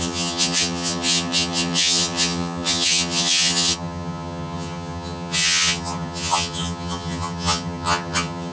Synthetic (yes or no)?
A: yes